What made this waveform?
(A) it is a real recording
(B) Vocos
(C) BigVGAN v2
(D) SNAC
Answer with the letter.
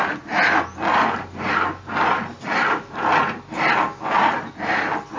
A